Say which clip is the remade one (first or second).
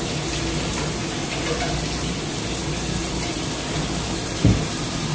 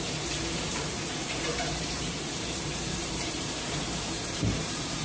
second